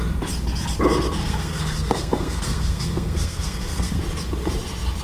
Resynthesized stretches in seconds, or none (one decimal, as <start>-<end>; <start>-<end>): 1.2-4.0